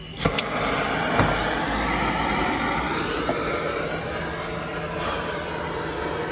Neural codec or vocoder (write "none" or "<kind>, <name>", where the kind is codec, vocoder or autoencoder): none